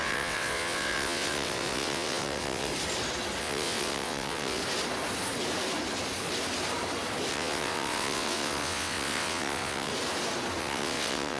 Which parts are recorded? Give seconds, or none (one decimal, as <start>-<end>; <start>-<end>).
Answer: 2.7-3.4; 4.6-7.3; 9.9-10.6